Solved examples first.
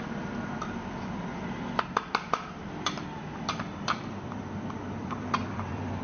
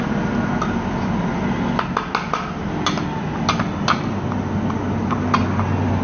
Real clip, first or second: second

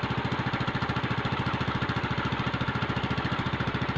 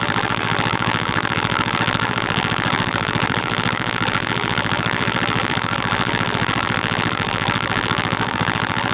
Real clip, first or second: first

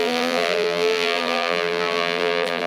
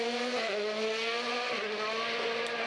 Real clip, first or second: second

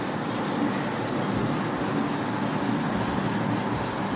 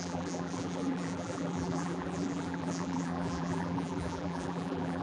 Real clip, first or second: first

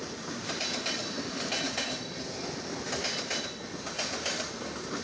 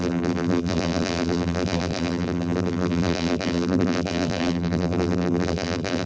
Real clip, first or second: first